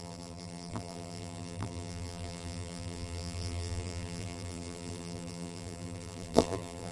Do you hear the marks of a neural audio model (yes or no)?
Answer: yes